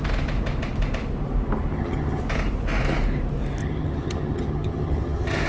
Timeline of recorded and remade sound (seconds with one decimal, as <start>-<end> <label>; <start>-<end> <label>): 0.0-1.7 recorded; 1.7-2.2 remade; 2.2-3.6 recorded; 3.6-5.5 remade